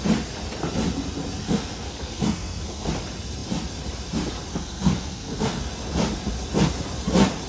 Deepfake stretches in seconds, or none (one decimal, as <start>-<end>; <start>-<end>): 1.4-2.9; 4.5-5.6